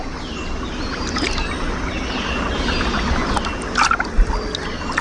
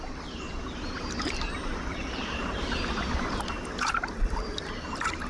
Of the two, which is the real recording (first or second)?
first